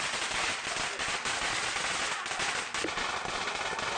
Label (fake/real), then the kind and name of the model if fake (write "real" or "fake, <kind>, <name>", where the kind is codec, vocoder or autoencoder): real